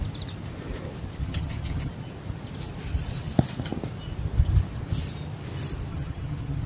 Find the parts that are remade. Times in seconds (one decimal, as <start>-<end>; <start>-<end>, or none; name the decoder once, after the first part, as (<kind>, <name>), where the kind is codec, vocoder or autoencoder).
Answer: 1.2-1.9 (vocoder, HiFi-GAN); 5.9-6.7